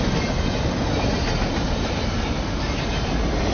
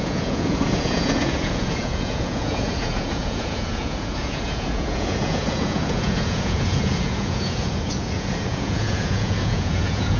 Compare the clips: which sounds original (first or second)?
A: first